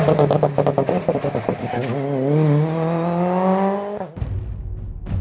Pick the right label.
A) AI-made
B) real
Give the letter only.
B